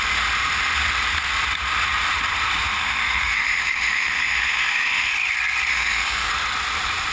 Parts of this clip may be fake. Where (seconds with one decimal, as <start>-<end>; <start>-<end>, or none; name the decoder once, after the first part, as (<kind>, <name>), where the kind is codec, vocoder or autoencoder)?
2.8-5.1 (autoencoder, DAC-VAE); 5.7-6.3